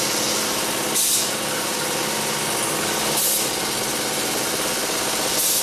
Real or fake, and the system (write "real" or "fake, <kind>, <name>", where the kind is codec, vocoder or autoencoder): real